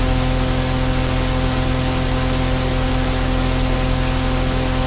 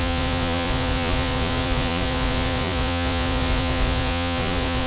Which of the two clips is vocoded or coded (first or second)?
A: second